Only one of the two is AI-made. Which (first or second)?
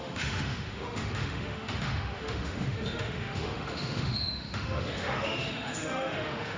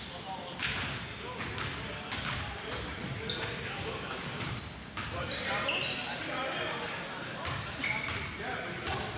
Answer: first